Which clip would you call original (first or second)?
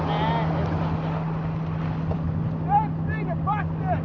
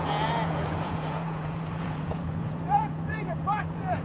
first